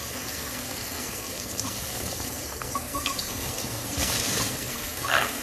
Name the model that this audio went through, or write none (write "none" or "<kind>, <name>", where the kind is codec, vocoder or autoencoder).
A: codec, SNAC